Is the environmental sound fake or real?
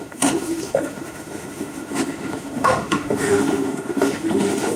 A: fake